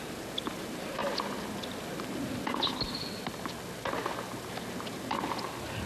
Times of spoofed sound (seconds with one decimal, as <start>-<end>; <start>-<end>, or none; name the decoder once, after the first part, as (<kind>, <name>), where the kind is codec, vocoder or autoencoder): none